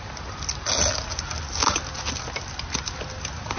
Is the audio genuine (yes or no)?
yes